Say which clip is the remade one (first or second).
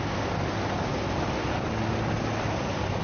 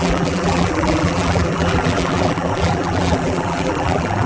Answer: second